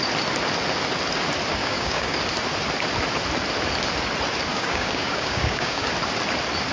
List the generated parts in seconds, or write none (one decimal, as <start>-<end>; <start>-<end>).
1.6-2.2; 4.5-5.9